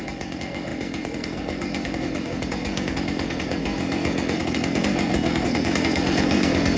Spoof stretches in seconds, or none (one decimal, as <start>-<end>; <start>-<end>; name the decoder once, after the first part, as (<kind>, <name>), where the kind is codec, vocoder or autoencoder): 0.0-6.8 (codec, SNAC)